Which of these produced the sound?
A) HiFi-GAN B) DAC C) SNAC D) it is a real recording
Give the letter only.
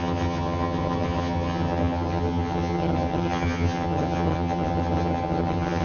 A